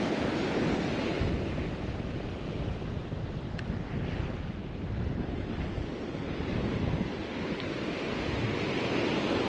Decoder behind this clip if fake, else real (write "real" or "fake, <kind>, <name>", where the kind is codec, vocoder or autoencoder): real